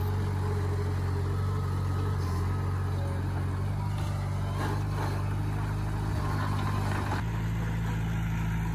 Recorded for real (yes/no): yes